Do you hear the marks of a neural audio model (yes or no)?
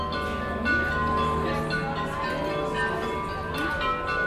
no